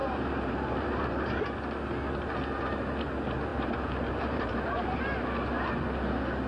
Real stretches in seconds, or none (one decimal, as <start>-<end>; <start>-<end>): 1.2-3.5; 5.0-6.5